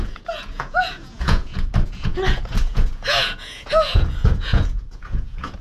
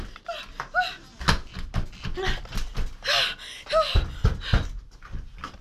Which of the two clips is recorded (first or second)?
second